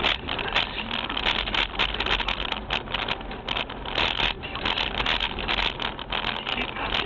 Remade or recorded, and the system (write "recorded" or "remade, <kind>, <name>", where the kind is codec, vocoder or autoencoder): recorded